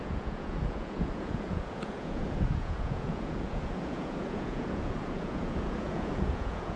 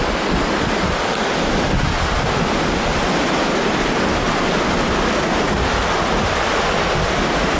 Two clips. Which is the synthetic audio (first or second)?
first